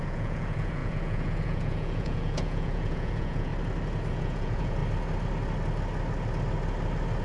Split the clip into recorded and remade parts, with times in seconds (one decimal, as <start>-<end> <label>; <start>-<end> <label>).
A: 0.0-3.5 remade; 3.5-4.1 recorded; 4.1-4.8 remade; 4.8-7.2 recorded